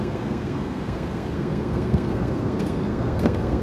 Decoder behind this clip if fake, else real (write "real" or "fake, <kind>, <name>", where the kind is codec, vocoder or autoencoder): fake, codec, SNAC